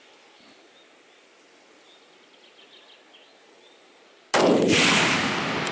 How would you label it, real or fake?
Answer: real